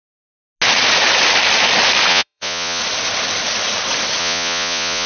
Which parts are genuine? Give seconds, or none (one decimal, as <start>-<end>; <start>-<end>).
0.0-2.1; 2.8-4.2